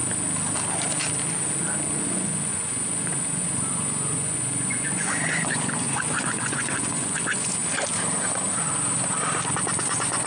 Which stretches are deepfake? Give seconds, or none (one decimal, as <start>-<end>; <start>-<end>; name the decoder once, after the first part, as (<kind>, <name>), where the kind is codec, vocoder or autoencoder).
2.0-7.6 (vocoder, Vocos); 9.8-10.3